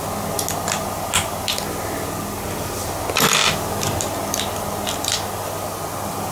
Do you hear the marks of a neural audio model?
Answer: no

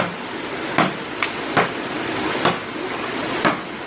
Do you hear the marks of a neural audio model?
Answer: no